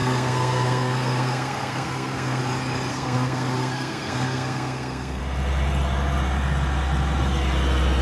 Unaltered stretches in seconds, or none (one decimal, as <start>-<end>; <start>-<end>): 2.4-2.9; 5.2-8.0